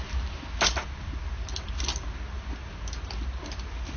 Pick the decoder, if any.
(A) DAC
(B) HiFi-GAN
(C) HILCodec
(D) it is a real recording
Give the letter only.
D